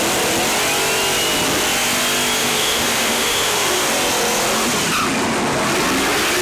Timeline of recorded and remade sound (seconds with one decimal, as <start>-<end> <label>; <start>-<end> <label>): 0.0-2.4 recorded; 2.4-3.9 remade; 3.9-6.4 recorded